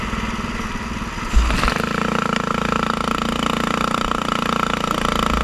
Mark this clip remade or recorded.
recorded